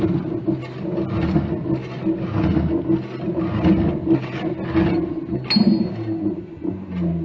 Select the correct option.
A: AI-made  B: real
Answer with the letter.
B